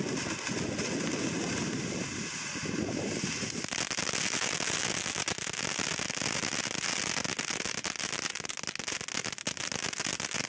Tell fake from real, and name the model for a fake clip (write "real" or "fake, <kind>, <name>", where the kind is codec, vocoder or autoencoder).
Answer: real